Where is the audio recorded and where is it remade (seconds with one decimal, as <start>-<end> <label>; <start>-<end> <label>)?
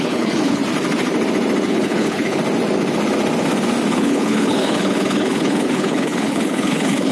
0.0-0.6 remade; 0.6-1.7 recorded; 1.7-2.4 remade; 2.4-3.9 recorded; 3.9-7.1 remade